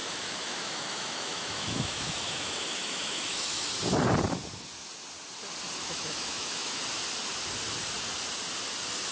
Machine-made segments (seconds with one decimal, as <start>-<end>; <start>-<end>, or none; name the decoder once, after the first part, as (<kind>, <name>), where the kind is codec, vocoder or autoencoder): 0.0-3.7 (autoencoder, DAC-VAE); 5.8-6.8